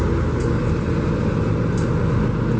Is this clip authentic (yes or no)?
yes